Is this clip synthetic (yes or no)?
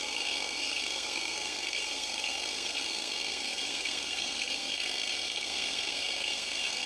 yes